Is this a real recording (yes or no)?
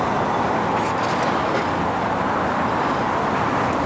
yes